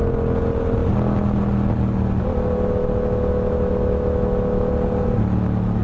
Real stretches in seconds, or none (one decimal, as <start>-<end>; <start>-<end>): 0.0-2.8; 4.7-5.8